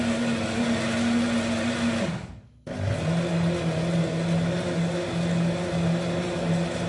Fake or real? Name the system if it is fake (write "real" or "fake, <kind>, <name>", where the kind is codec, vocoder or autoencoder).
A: real